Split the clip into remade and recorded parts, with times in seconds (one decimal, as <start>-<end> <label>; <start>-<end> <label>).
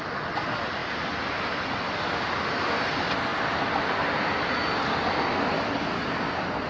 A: 0.0-6.7 recorded